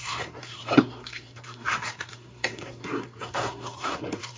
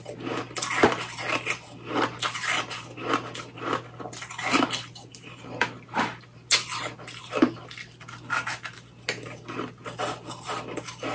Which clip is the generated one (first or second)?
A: first